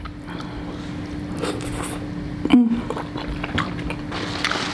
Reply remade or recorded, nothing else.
recorded